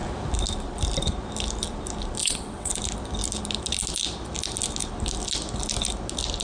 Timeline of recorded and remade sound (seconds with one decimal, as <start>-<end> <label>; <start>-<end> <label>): 0.0-2.2 recorded; 2.2-2.7 remade; 2.7-6.4 recorded